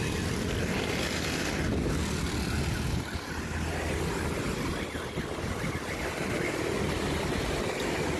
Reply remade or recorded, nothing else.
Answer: recorded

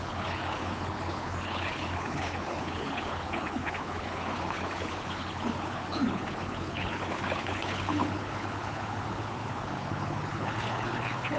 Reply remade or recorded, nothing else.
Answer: remade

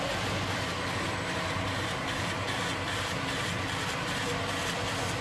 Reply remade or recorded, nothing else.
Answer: recorded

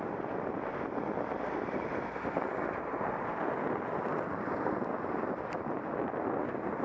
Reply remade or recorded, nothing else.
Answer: recorded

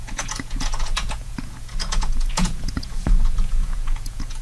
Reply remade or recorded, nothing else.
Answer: remade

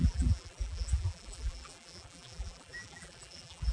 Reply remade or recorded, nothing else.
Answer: remade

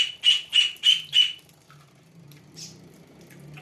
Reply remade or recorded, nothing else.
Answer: recorded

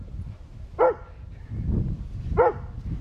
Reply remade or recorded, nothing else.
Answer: recorded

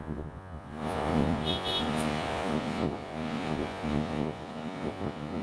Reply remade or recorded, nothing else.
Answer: remade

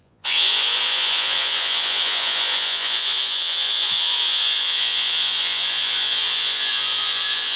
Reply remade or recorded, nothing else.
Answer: remade